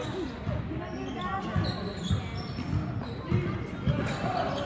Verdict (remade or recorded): recorded